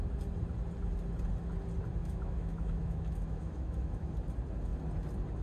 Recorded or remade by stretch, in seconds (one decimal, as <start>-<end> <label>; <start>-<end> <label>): 0.0-2.0 recorded; 2.0-4.1 remade; 4.1-5.4 recorded